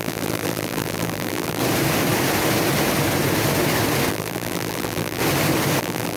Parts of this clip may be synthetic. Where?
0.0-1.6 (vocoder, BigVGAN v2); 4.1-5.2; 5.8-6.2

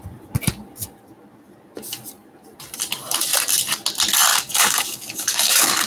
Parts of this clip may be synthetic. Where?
4.3-5.9 (codec, DAC)